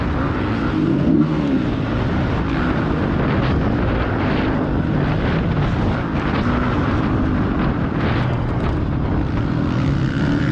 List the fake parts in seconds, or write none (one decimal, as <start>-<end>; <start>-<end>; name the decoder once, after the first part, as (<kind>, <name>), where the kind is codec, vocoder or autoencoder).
0.9-1.5 (codec, SNAC)